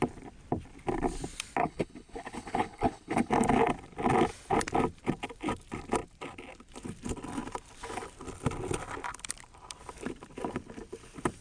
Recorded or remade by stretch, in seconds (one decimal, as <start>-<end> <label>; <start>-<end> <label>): 0.0-1.6 recorded; 1.6-3.3 remade; 3.3-11.4 recorded